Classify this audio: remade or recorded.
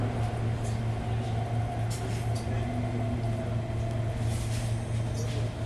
recorded